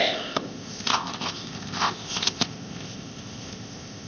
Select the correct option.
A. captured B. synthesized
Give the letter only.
B